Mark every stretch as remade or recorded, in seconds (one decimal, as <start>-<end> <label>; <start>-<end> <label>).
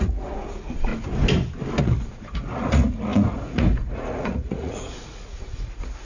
0.0-0.9 remade; 0.9-1.8 recorded; 1.8-6.0 remade